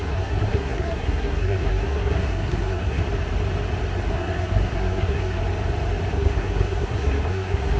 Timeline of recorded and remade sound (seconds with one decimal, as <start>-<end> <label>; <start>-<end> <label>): 0.0-3.0 remade; 3.0-4.1 recorded; 4.1-5.4 remade; 5.4-6.1 recorded; 6.1-7.8 remade